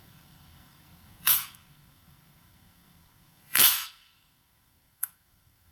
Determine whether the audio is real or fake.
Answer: fake